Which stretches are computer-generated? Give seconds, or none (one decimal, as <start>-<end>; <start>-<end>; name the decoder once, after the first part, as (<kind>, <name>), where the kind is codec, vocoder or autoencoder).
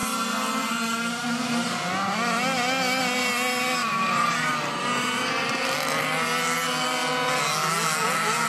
none